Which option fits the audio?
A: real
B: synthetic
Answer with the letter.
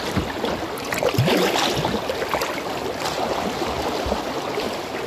A